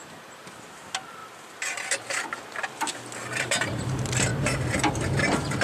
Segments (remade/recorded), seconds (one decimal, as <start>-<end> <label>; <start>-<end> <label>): 0.0-4.3 recorded; 4.3-4.9 remade; 4.9-5.6 recorded